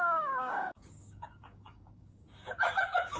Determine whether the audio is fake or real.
fake